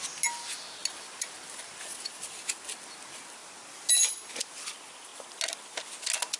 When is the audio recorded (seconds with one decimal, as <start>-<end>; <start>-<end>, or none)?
0.0-6.4